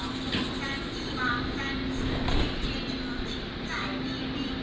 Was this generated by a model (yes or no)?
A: no